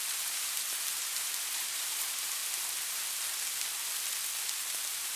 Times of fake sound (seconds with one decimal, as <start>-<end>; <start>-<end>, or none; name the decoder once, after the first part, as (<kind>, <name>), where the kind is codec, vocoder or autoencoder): 0.0-2.4 (vocoder, BigVGAN v2); 4.6-5.2